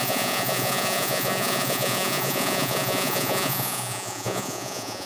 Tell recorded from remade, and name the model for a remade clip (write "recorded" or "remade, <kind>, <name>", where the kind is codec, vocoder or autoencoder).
remade, vocoder, Vocos